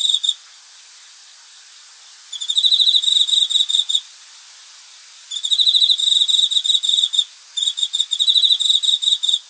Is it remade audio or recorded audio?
recorded